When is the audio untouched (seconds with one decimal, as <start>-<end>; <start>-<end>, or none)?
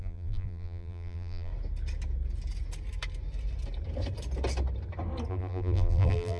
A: 1.5-5.3